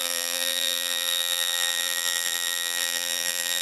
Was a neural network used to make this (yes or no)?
yes